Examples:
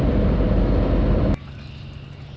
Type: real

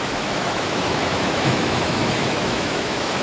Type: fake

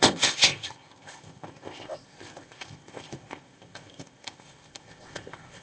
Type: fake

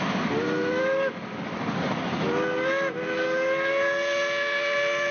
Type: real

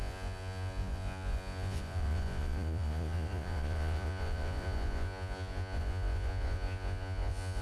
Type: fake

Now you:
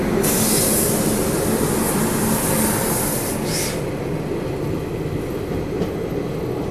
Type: real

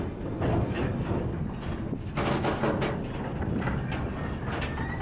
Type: real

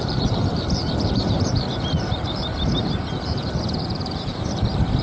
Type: fake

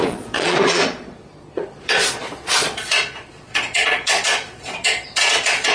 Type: fake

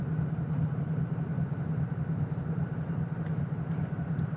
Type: fake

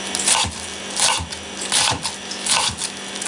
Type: real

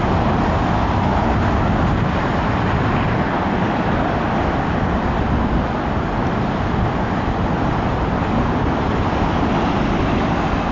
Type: real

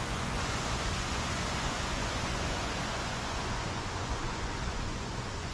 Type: fake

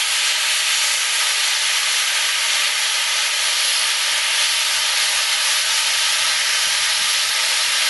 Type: real